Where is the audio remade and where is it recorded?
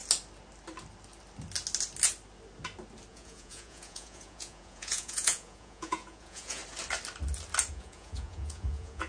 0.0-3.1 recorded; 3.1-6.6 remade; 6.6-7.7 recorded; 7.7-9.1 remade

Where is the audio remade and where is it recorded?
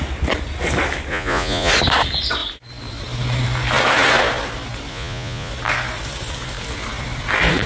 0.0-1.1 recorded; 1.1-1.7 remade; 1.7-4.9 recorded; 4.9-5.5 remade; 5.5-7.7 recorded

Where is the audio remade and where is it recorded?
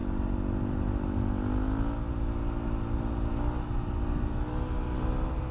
0.0-5.5 recorded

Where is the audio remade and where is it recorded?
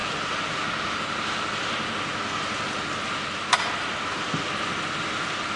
0.0-5.6 recorded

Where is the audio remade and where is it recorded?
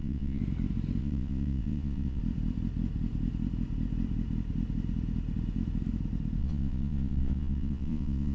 0.0-0.4 remade; 0.4-1.0 recorded; 1.0-2.2 remade; 2.2-6.4 recorded; 6.4-8.3 remade